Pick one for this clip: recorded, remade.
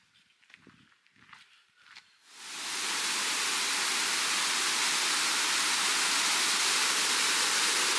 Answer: recorded